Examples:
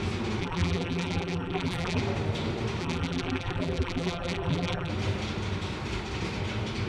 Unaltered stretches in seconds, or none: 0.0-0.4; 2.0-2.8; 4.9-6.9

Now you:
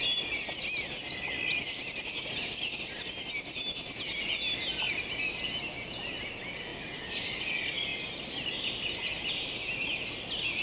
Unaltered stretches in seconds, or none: 0.0-7.9; 8.5-10.6

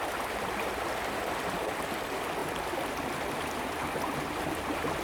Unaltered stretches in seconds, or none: 0.0-5.0

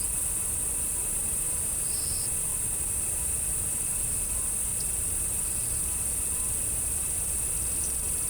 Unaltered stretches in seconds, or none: 0.0-2.5; 3.9-8.3

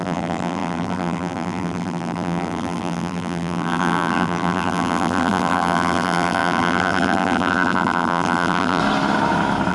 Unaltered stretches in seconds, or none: 8.8-9.7